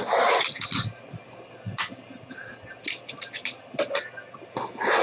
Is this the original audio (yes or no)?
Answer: yes